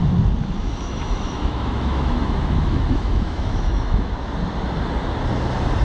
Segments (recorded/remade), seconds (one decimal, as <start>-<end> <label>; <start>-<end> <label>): 0.0-0.6 recorded; 0.6-4.1 remade; 4.1-5.8 recorded